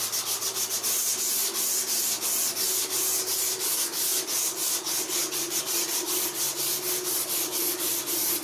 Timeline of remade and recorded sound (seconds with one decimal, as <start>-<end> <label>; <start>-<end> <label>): 0.0-8.4 recorded